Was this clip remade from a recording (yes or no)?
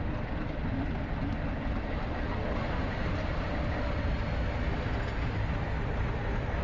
no